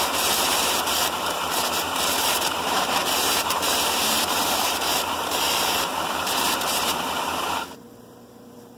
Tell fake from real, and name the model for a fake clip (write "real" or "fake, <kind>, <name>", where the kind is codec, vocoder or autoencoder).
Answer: fake, vocoder, BigVGAN v2